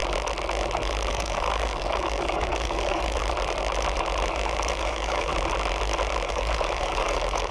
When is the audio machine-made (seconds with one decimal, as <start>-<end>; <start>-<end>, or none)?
1.1-3.2; 4.7-5.3; 6.3-7.5